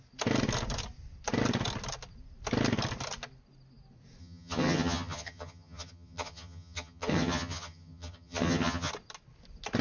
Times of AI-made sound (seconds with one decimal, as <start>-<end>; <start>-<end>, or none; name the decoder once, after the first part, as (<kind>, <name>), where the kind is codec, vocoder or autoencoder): 4.2-8.9 (vocoder, HiFi-GAN)